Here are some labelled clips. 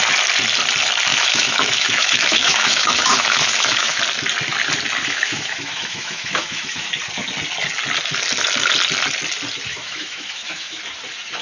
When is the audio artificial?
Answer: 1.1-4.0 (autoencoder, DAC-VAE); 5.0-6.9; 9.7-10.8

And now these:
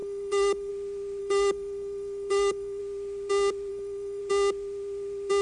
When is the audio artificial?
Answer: 0.0-0.7 (autoencoder, DAC-VAE); 1.2-2.8; 3.7-4.2

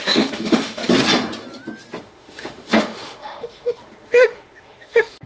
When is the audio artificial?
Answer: 0.0-0.8 (autoencoder, DAC-VAE); 2.0-5.3

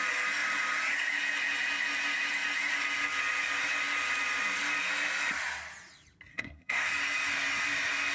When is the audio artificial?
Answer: 6.3-6.9 (codec, SNAC)

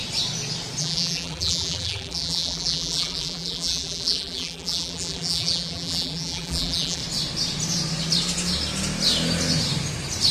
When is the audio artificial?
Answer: 0.8-7.0 (vocoder, BigVGAN v2)